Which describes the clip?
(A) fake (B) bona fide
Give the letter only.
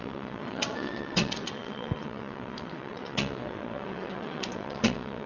A